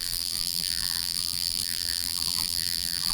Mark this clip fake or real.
fake